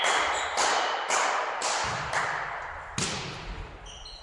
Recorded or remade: recorded